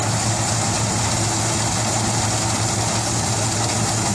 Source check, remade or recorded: recorded